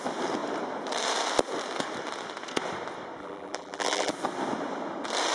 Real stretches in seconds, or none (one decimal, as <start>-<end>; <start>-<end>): 0.0-3.2; 4.1-5.3